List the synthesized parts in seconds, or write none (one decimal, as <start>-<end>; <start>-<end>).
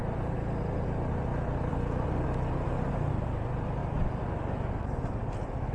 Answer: 1.3-2.2; 3.8-4.7